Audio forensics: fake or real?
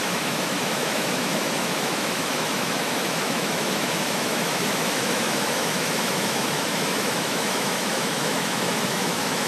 fake